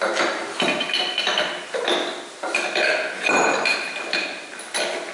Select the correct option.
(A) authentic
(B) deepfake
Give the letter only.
A